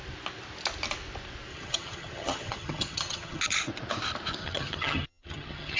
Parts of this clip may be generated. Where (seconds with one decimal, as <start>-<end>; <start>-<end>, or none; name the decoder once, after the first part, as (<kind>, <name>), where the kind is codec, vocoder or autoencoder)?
1.5-3.4 (vocoder, HiFi-GAN); 4.4-5.8